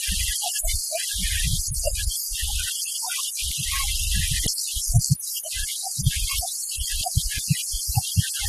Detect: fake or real real